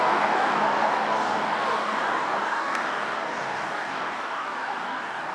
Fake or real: fake